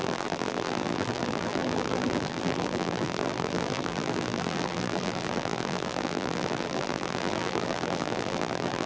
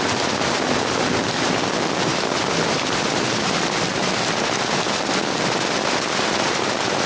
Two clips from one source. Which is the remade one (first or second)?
first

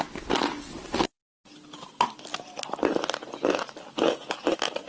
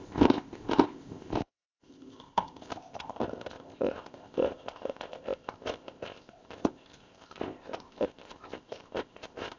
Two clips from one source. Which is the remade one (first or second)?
second